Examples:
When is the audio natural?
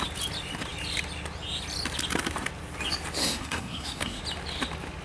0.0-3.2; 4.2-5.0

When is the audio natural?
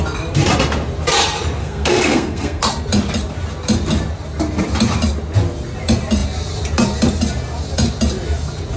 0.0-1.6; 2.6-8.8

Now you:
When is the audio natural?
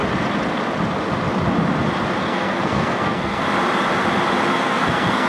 0.0-2.2; 3.4-4.5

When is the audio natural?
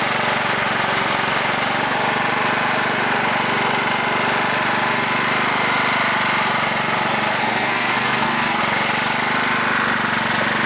0.0-7.3; 8.6-10.7